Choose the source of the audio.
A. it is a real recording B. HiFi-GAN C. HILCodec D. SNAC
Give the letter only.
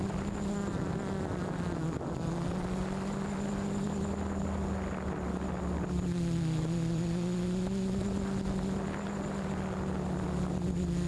A